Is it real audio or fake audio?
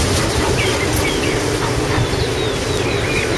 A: real